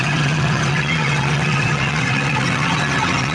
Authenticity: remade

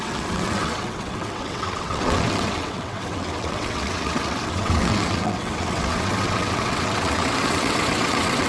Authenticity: remade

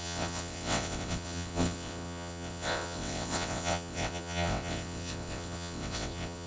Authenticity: remade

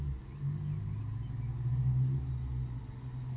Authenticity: recorded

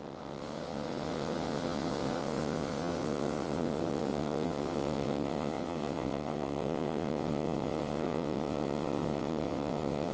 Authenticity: remade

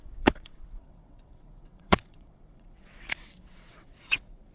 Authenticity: remade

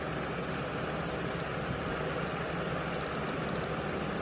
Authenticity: recorded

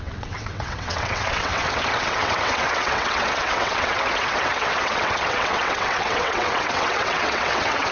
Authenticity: remade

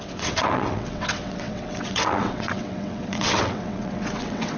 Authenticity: remade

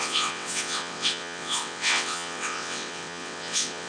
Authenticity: remade